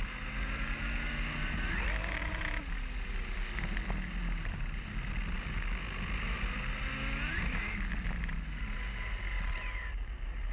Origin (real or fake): real